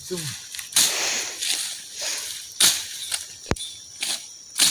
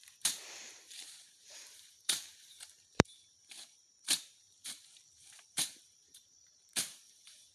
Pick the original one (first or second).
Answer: first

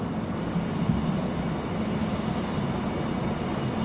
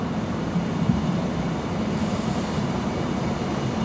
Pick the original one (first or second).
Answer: first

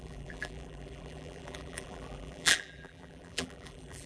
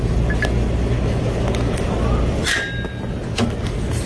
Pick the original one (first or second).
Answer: second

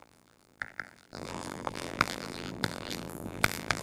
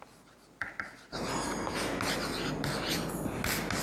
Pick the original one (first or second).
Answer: second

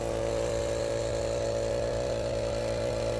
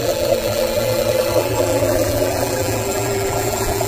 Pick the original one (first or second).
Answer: first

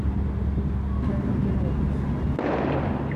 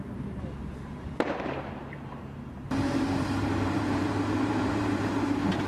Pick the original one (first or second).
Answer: first